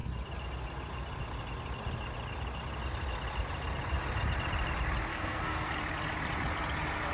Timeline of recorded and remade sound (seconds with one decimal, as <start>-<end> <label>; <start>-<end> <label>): 0.0-5.1 recorded; 5.1-5.7 remade; 5.7-7.1 recorded